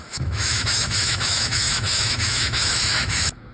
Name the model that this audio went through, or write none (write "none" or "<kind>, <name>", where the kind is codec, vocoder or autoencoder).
autoencoder, DAC-VAE